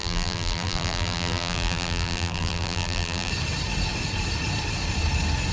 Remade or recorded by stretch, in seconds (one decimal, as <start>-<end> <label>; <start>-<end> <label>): 0.0-3.3 remade; 3.3-5.5 recorded